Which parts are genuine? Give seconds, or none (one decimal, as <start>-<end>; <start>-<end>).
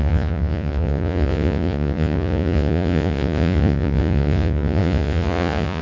none